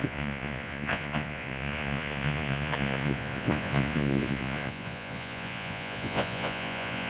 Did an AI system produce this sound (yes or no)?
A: yes